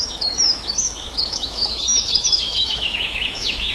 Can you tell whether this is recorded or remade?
remade